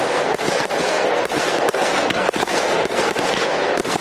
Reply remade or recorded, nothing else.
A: remade